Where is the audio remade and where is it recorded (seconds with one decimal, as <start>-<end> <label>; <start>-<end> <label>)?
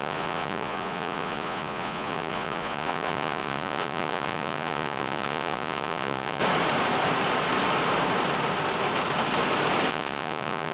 0.0-6.4 remade; 6.4-9.9 recorded; 9.9-10.7 remade